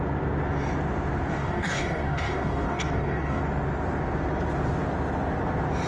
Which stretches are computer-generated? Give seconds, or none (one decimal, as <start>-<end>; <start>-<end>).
1.3-3.4